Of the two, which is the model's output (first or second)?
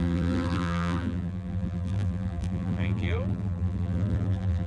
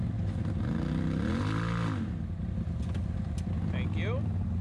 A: first